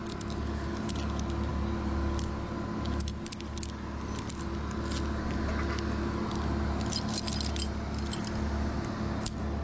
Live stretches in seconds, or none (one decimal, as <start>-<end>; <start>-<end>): 0.0-9.6